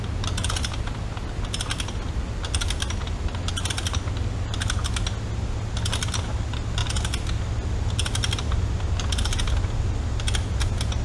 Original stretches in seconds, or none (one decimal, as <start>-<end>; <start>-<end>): 0.0-11.0